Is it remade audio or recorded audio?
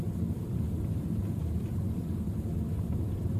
remade